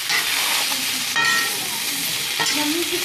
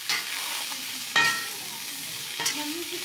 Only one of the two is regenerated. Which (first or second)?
second